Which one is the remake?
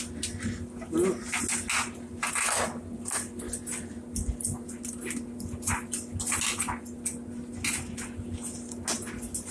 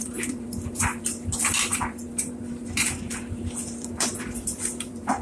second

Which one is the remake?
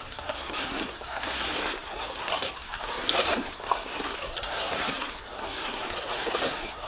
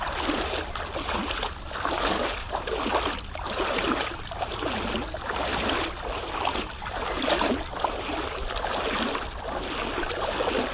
first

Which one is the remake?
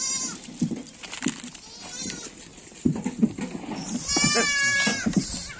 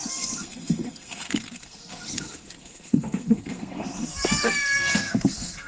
second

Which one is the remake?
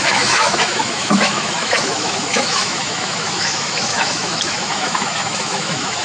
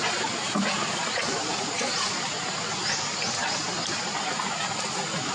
first